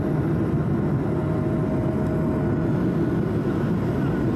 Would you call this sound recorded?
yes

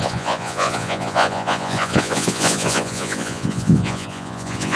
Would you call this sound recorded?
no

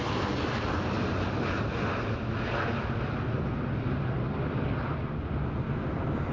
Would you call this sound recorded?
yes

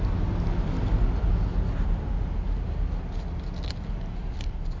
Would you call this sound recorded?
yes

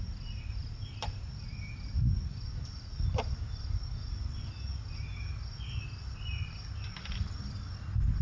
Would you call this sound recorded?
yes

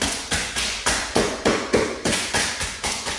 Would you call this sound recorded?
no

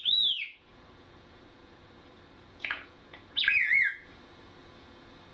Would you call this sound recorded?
no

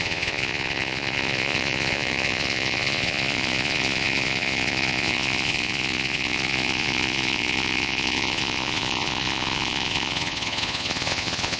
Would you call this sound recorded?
no